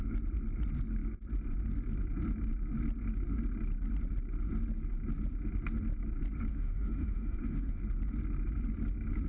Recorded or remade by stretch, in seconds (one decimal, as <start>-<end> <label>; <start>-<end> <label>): 0.0-6.5 recorded; 6.5-7.8 remade; 7.8-9.3 recorded